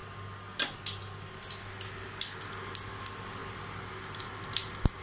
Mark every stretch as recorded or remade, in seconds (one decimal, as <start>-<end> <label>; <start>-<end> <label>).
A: 0.0-5.0 recorded